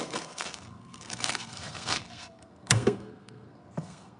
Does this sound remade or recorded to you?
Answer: remade